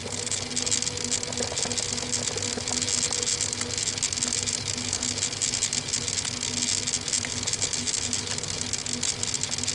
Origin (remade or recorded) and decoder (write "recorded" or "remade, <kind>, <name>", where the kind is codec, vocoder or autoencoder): recorded